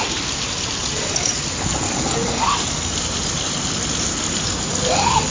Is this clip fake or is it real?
real